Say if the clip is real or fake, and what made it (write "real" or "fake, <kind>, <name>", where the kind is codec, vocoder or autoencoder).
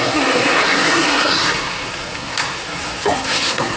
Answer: fake, codec, SNAC